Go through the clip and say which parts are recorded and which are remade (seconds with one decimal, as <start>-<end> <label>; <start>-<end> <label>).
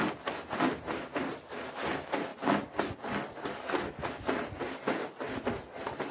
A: 0.0-0.7 recorded; 0.7-1.8 remade; 1.8-6.1 recorded